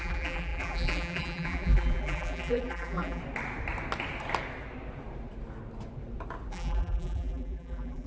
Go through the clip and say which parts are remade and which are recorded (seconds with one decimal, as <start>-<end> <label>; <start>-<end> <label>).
0.0-3.2 remade; 3.2-6.5 recorded; 6.5-8.1 remade